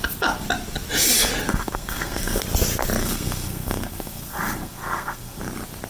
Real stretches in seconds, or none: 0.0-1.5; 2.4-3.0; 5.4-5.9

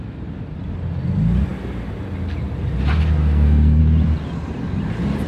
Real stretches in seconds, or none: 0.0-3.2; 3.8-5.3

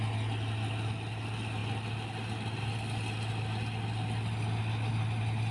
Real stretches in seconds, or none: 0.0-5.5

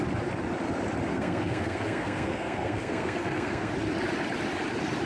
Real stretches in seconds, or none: 0.0-1.1; 3.7-5.1

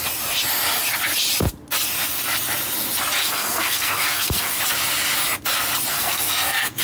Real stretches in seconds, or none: 0.0-3.2; 4.6-5.9

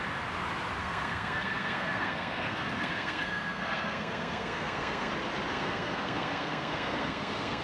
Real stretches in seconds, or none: 0.0-0.8; 5.1-5.5